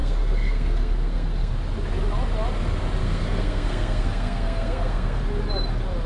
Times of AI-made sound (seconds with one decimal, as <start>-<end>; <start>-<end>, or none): 0.0-1.5; 3.0-5.2